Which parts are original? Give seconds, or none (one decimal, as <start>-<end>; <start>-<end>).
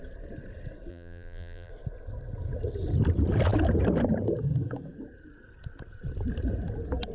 0.0-0.9; 1.7-7.1